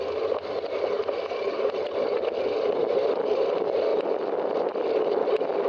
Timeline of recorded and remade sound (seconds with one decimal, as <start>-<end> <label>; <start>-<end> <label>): 0.0-5.7 recorded